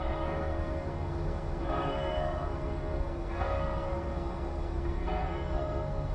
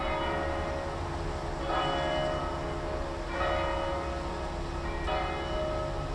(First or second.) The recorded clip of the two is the second